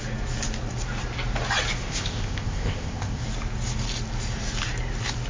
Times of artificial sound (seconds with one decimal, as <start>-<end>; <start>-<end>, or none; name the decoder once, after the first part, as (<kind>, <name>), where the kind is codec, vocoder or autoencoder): 1.8-3.2 (codec, ZipCodec)